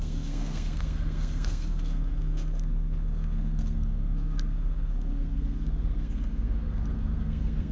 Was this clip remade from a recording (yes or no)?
yes